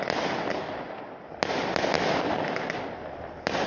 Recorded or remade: recorded